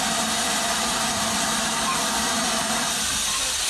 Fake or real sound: real